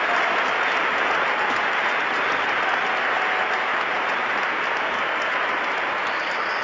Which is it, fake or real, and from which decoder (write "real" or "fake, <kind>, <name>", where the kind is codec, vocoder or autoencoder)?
real